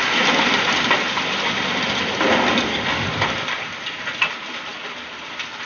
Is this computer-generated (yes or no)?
no